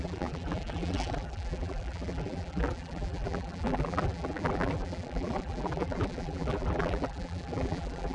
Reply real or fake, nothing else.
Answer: fake